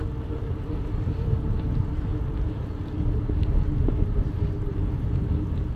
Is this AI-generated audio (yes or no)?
no